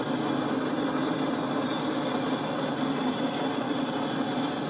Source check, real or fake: real